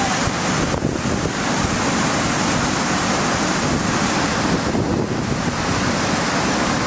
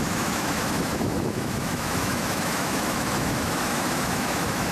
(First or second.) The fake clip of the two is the second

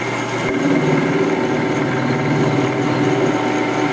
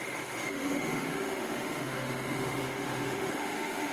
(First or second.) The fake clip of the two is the second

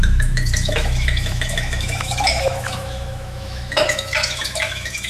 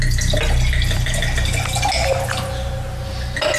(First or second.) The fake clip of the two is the first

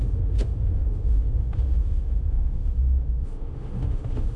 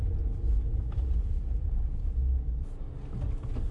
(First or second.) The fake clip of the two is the first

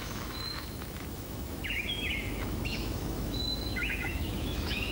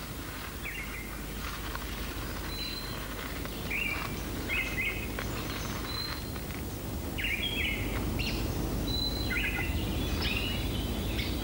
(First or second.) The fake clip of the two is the first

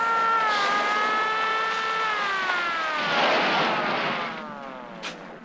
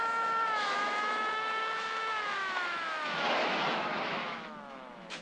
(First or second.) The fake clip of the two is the second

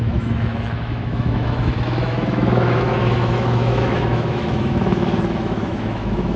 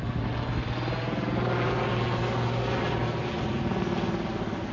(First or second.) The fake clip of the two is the first